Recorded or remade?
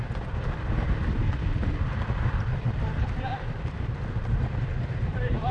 remade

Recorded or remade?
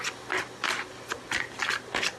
recorded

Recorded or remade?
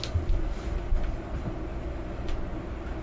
recorded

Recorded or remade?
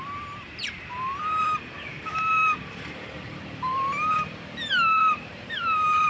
remade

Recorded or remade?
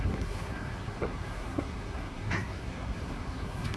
remade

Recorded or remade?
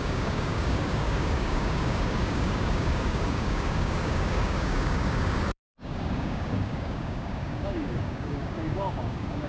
remade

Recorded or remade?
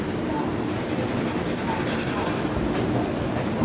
recorded